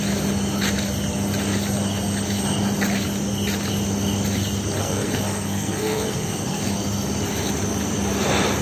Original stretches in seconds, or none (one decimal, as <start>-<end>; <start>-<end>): 0.0-4.8; 6.7-8.6